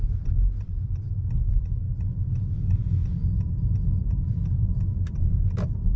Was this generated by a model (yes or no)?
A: no